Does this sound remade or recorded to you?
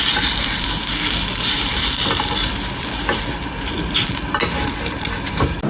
recorded